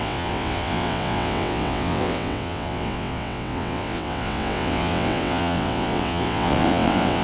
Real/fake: fake